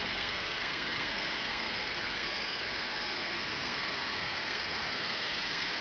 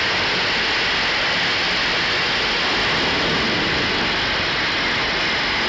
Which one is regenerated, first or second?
first